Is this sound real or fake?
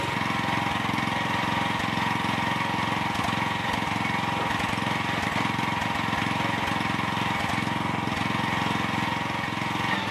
real